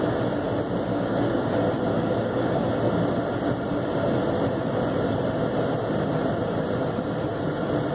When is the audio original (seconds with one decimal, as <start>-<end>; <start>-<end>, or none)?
0.0-0.9; 1.5-1.9; 2.7-7.9

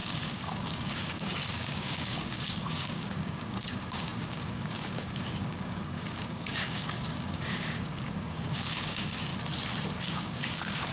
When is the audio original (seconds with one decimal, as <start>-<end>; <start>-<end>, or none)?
9.3-10.0

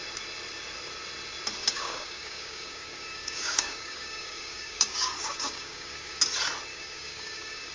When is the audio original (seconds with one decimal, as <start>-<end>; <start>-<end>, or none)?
0.0-1.6; 6.2-6.7

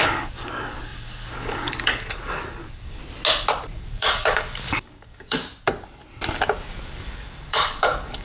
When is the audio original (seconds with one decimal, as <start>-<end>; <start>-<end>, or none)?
3.0-3.7; 5.4-6.8